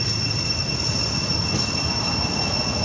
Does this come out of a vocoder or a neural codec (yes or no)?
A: no